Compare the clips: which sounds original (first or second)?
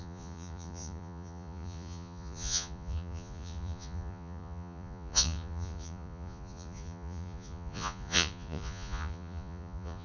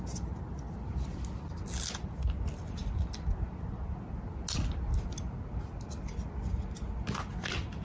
second